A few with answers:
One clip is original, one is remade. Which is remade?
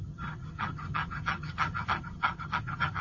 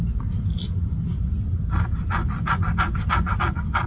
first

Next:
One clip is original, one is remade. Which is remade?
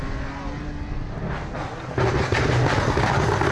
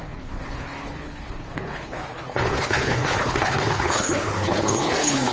second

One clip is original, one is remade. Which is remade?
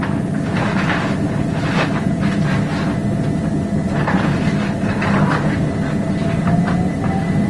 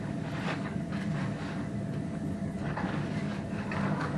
second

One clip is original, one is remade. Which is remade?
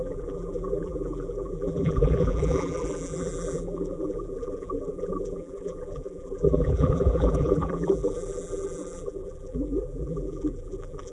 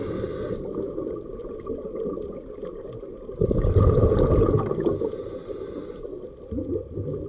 first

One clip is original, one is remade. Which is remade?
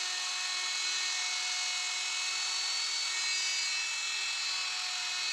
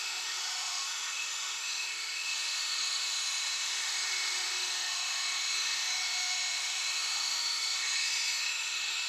second